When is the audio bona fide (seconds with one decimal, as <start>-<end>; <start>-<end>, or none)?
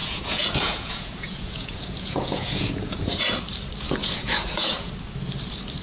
3.2-4.0; 4.9-5.8